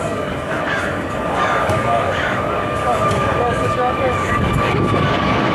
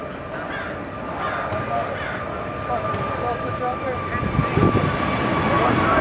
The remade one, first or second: first